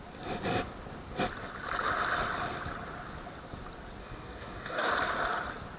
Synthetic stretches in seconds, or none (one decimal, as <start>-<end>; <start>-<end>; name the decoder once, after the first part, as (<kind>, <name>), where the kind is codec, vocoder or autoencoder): 4.0-4.9 (codec, DAC)